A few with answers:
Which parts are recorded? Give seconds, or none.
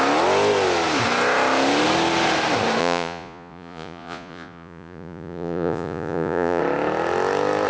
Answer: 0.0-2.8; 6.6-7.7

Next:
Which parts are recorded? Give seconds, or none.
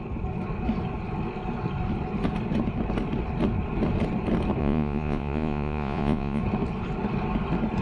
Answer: 0.0-4.6; 6.4-7.8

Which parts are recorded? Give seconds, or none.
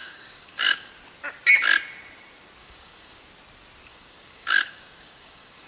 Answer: 0.9-2.6; 3.2-3.9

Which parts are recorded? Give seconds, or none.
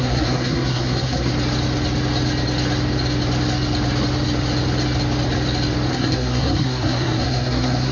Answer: 1.3-5.9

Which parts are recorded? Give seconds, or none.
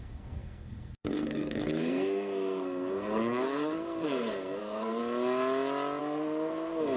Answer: 5.0-6.0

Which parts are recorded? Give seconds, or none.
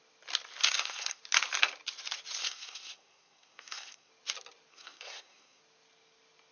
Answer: 0.0-0.6; 1.2-2.4; 4.1-4.7; 5.6-6.5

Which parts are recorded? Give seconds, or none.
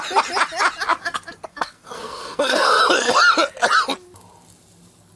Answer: 0.0-1.5; 2.8-5.2